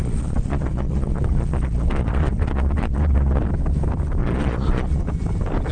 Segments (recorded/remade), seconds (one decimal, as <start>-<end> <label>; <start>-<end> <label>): 0.0-3.4 remade; 3.4-4.2 recorded; 4.2-5.0 remade; 5.0-5.7 recorded